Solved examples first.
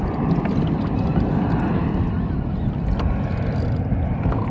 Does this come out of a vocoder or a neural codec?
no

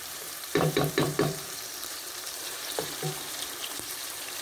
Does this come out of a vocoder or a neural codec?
yes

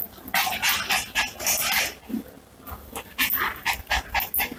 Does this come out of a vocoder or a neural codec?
no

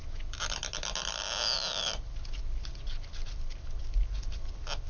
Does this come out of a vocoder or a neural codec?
no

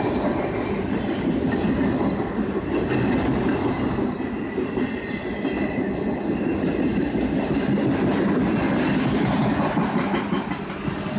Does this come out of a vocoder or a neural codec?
no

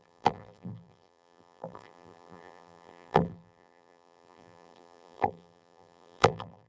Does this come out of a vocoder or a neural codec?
yes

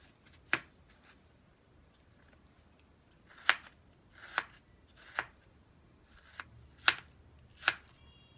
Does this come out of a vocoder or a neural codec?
no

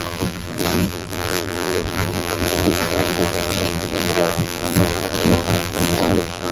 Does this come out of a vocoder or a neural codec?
yes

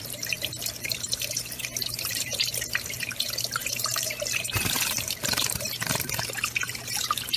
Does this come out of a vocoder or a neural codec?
yes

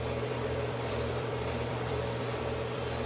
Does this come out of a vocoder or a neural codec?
yes